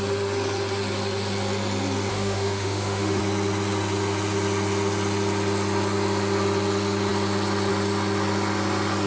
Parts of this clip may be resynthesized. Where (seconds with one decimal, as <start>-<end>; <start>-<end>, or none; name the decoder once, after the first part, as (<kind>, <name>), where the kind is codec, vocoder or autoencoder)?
2.1-3.2 (autoencoder, DAC-VAE)